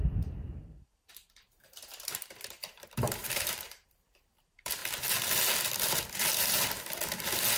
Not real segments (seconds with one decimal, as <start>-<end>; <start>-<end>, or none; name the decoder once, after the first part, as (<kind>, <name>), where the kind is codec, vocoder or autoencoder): 0.0-4.8 (vocoder, BigVGAN v2)